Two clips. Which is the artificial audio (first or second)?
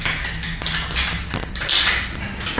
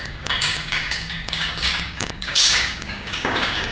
second